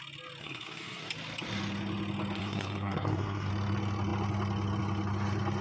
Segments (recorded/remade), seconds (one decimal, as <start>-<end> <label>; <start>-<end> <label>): 0.0-0.4 recorded; 0.4-1.1 remade; 1.1-2.4 recorded; 2.4-3.5 remade; 3.5-5.6 recorded